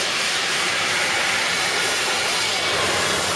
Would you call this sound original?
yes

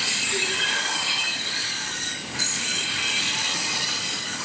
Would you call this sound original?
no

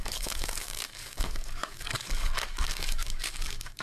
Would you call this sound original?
no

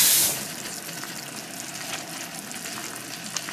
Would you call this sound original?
yes